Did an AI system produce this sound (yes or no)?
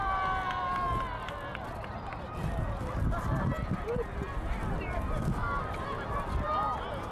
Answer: no